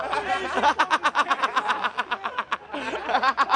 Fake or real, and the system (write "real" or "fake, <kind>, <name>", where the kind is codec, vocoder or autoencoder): real